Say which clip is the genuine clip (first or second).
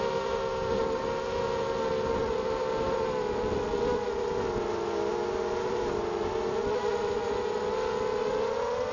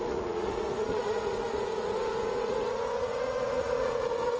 first